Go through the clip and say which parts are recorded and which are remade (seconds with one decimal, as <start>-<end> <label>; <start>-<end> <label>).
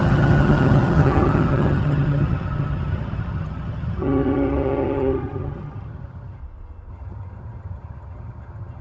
0.0-6.4 remade; 6.4-6.9 recorded; 6.9-8.8 remade